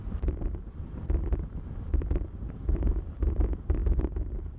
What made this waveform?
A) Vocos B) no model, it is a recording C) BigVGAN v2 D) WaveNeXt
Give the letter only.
C